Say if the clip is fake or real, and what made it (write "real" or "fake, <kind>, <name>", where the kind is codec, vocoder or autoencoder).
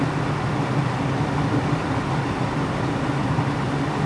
real